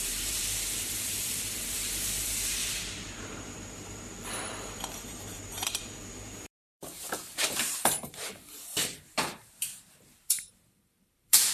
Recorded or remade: remade